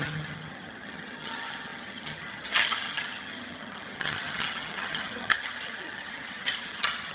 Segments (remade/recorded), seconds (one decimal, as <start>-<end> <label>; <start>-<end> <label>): 0.0-7.1 remade